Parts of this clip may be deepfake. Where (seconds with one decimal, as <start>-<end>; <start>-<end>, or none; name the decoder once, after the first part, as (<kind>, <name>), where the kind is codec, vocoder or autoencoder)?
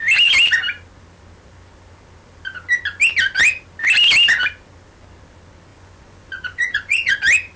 5.7-7.1 (vocoder, Vocos)